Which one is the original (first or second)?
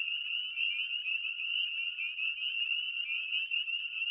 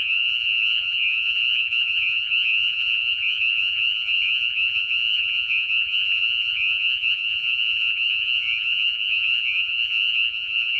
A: first